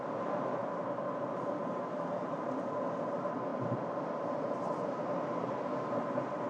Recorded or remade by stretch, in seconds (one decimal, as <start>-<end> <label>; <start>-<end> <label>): 0.0-6.5 recorded